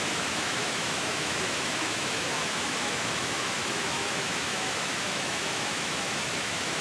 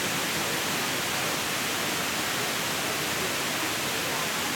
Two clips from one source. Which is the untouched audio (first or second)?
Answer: second